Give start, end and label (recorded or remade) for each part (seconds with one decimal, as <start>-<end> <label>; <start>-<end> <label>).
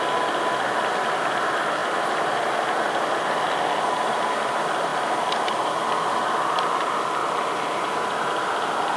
0.0-9.0 recorded